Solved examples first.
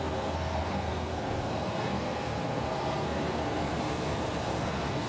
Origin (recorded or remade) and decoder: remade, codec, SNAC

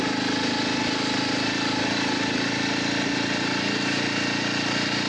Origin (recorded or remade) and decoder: recorded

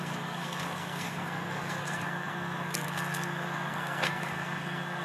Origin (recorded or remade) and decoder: remade, codec, SNAC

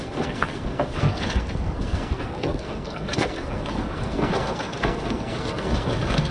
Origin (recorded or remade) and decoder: remade, codec, SNAC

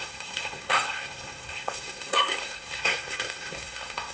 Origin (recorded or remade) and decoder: remade, codec, SNAC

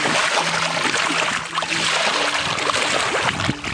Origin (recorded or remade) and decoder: recorded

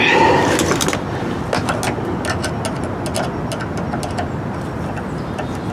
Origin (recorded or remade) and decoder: recorded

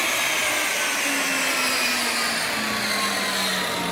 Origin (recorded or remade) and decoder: recorded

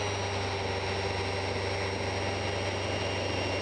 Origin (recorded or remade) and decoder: recorded